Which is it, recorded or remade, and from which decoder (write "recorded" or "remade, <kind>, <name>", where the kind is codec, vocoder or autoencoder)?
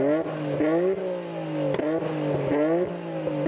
recorded